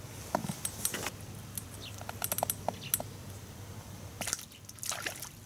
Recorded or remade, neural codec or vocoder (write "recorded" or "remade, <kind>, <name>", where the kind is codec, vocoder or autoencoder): recorded